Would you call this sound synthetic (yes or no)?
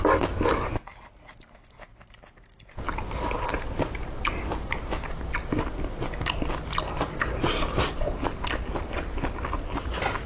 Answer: no